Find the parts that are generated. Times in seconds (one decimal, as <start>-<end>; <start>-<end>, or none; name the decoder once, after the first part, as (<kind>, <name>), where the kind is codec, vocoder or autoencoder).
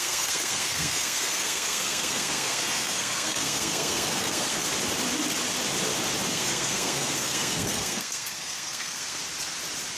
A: 0.0-4.7 (codec, SNAC); 6.3-9.2